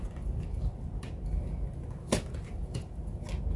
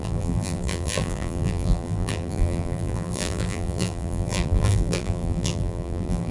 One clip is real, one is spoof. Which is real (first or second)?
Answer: first